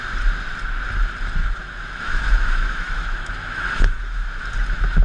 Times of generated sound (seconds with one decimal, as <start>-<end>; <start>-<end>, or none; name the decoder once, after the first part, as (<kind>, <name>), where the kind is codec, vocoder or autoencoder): 1.4-4.4 (autoencoder, DAC-VAE)